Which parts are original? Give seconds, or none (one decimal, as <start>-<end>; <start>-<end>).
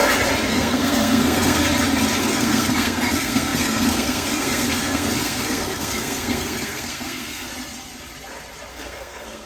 0.0-0.5; 1.6-2.2; 7.5-8.7